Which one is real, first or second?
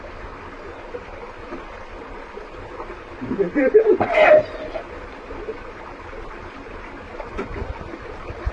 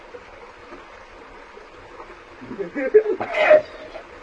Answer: second